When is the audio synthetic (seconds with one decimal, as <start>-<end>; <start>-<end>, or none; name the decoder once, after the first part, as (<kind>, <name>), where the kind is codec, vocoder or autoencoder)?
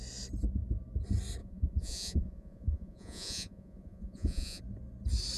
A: 1.4-4.6 (vocoder, Vocos)